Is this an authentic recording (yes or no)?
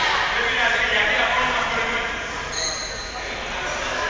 yes